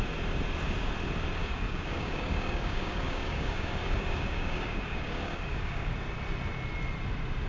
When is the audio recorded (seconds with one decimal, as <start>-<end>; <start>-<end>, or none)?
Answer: 0.0-1.4; 5.9-7.5